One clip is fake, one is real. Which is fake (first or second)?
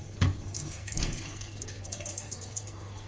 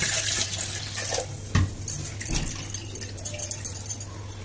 first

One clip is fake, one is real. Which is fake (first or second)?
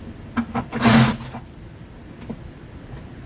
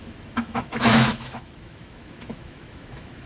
second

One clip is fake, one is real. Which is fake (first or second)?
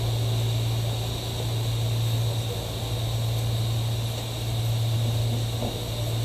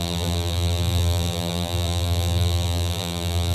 second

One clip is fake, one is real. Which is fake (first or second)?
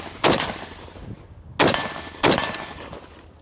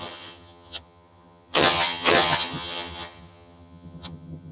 second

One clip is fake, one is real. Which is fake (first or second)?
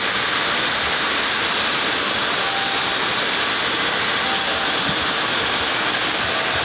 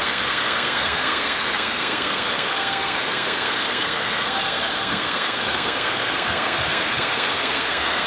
second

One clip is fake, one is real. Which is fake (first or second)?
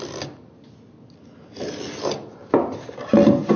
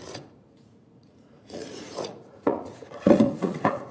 second